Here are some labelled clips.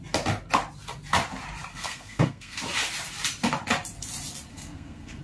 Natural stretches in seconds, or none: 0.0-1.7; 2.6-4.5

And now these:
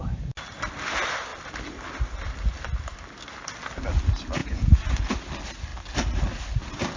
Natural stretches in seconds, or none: 0.0-4.4; 5.0-7.0